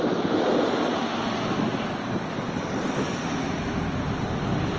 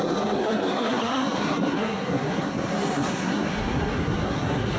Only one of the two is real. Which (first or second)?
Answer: first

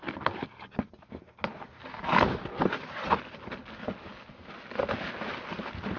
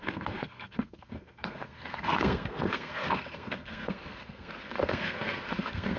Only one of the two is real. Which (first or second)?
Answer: first